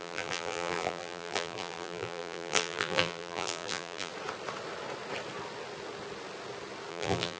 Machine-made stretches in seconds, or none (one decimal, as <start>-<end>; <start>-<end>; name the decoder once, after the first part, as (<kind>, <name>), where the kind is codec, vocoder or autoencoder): 0.0-4.1 (vocoder, BigVGAN v2); 6.9-7.4